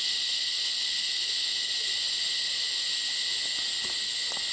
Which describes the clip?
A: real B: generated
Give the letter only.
A